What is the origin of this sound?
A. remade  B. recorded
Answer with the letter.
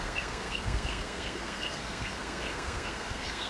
A